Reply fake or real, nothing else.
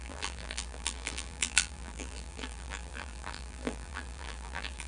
fake